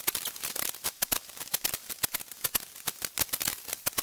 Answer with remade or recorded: recorded